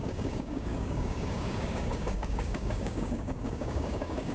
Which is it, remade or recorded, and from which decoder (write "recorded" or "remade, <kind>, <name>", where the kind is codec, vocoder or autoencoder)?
remade, codec, DAC